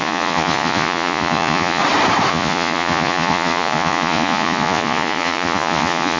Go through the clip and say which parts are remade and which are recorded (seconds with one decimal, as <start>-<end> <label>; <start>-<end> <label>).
0.0-1.8 remade; 1.8-2.3 recorded; 2.3-6.2 remade